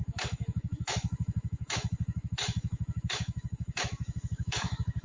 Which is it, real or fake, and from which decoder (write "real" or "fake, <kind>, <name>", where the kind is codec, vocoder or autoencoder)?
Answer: fake, autoencoder, DAC-VAE